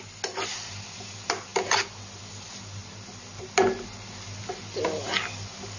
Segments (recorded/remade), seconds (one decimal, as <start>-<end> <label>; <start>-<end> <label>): 0.0-5.8 recorded